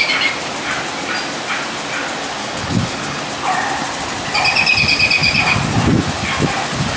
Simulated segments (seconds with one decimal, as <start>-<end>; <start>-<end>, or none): 2.4-3.2

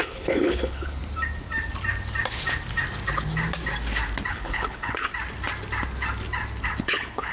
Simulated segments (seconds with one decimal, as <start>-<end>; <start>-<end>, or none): 0.0-1.0; 4.3-5.1; 6.8-7.3

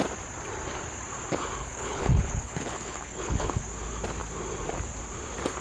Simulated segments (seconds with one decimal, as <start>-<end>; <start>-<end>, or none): 1.6-3.6

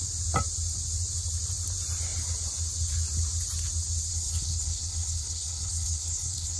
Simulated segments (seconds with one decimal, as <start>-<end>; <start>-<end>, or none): 4.1-6.6

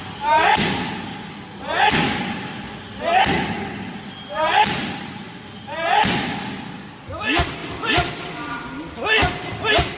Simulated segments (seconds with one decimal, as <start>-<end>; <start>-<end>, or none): none

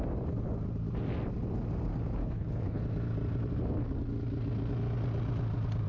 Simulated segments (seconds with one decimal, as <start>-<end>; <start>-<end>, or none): 2.2-2.8